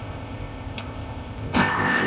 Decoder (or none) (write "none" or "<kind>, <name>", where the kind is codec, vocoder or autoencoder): codec, ZipCodec